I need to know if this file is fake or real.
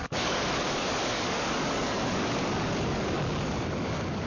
fake